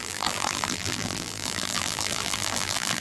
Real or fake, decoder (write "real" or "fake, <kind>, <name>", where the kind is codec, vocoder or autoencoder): fake, vocoder, BigVGAN v2